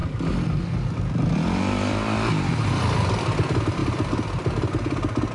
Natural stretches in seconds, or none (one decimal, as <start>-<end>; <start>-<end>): 0.0-5.3